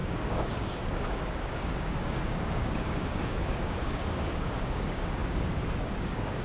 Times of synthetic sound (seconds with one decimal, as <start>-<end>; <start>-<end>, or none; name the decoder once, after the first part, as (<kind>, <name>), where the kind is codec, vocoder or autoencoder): 0.0-6.4 (codec, DAC)

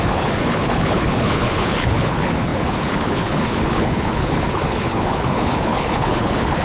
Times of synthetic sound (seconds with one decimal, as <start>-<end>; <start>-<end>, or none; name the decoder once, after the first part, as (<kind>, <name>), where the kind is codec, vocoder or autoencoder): 0.0-6.6 (codec, HILCodec)